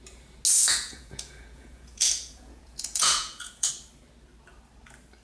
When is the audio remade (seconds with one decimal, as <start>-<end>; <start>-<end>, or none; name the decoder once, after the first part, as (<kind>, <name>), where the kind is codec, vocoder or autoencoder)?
0.6-3.7 (vocoder, Vocos)